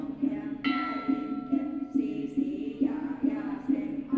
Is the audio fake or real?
real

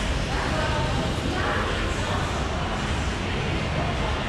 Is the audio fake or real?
real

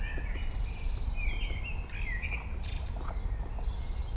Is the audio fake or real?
fake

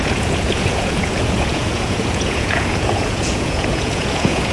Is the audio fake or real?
fake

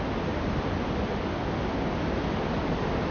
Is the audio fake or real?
real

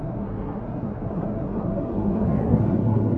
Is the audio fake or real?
fake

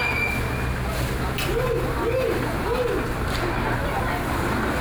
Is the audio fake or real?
real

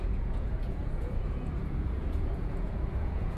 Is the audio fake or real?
fake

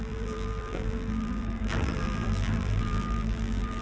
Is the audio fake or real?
fake